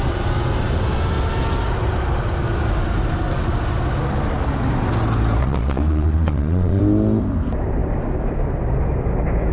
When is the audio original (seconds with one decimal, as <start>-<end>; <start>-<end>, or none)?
0.0-5.4; 6.8-9.5